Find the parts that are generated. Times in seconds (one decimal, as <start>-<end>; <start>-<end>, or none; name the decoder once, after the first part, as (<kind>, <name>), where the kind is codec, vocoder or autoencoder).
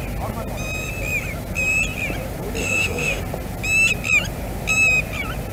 2.6-3.2 (autoencoder, DAC-VAE)